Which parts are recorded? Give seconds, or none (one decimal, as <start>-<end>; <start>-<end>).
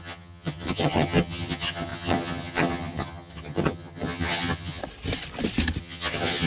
4.8-5.8